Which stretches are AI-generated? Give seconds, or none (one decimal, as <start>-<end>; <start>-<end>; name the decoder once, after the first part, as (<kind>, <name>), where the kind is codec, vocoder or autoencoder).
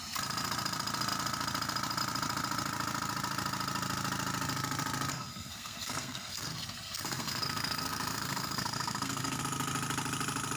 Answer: 5.1-9.4 (codec, SNAC)